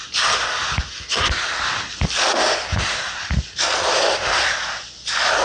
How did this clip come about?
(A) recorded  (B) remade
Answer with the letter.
A